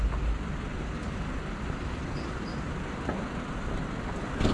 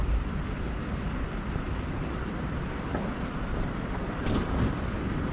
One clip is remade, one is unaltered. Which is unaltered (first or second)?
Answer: first